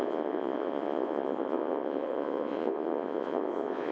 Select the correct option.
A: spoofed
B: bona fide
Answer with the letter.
A